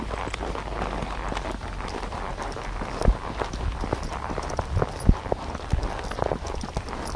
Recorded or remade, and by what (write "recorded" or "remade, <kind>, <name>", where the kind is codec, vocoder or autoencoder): recorded